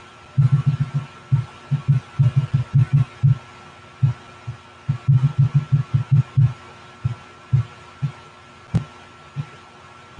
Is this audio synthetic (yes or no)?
no